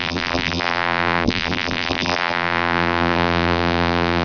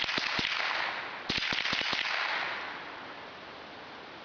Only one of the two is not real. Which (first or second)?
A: first